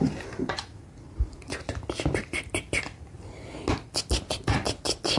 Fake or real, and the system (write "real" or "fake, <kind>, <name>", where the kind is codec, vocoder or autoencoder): real